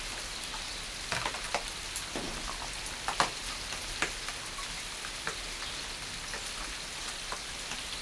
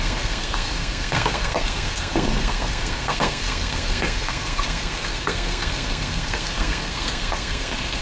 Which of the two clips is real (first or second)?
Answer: first